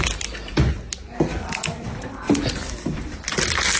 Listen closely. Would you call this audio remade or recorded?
recorded